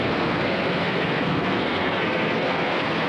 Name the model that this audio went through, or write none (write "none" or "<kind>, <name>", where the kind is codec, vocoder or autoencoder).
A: codec, SNAC